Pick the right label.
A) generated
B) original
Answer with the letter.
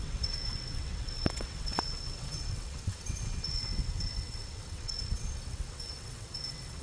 A